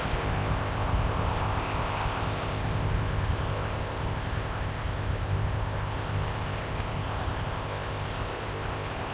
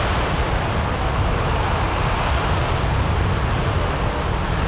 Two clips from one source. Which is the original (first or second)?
second